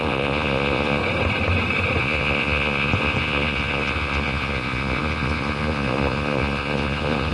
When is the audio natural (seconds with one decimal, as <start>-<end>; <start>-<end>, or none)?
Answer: 1.0-2.0